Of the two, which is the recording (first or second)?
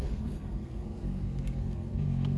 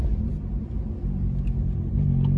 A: second